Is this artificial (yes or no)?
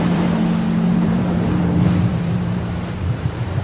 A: yes